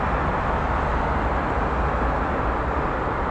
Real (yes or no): yes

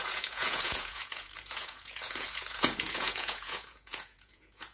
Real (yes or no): no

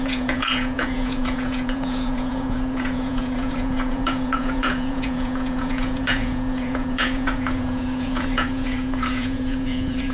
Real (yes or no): no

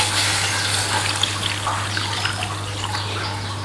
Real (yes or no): yes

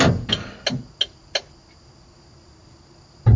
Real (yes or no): yes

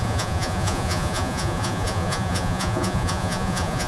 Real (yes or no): no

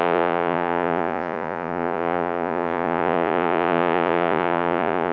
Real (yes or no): no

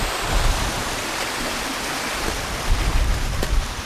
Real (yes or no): yes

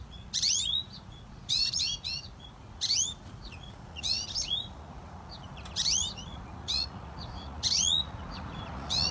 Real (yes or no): no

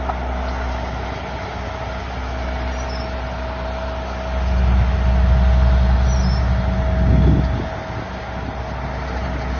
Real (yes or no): yes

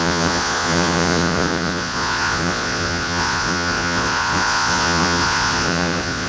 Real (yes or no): no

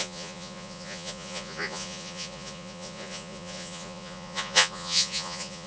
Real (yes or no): no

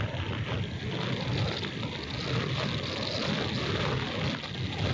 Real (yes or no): yes